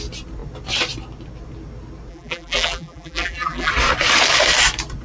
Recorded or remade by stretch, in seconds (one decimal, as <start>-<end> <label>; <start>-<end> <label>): 0.0-2.1 recorded; 2.1-3.7 remade; 3.7-5.0 recorded